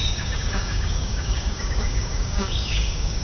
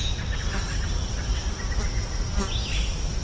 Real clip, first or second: second